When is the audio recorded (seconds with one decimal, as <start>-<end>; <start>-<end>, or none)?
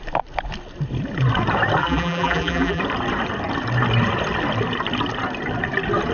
0.0-1.8; 2.8-6.1